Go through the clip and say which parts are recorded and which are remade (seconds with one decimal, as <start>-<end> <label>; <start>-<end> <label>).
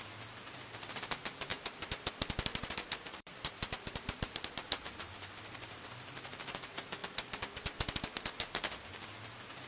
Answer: 0.0-1.5 recorded; 1.5-2.1 remade; 2.1-2.5 recorded; 2.5-5.8 remade; 5.8-9.7 recorded